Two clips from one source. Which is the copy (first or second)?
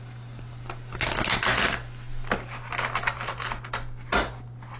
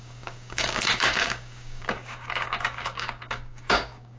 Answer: second